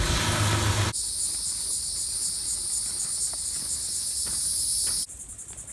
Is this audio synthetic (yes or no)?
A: no